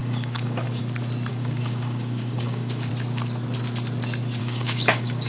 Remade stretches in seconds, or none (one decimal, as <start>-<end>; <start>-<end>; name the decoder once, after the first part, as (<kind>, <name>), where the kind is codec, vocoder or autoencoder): 0.0-0.8 (codec, DAC); 1.3-2.9; 4.4-5.3